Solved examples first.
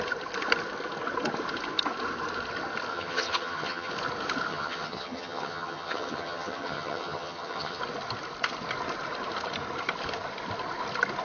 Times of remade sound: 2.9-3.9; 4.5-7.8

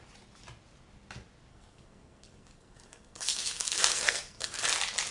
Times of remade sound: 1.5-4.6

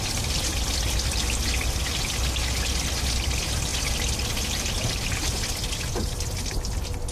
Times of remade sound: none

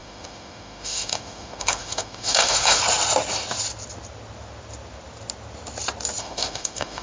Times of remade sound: 0.0-2.8; 6.2-7.0

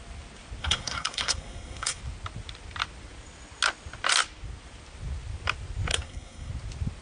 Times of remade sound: 0.6-2.0; 5.9-6.5